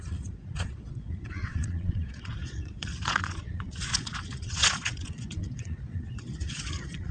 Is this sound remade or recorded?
remade